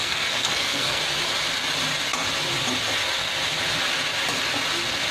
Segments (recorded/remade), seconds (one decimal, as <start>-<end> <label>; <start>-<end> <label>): 0.0-1.0 remade; 1.0-5.1 recorded